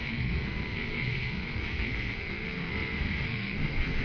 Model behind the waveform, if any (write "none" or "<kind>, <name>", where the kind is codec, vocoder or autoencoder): codec, SNAC